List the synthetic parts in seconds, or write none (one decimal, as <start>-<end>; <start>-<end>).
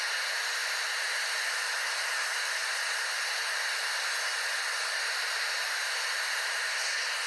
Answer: none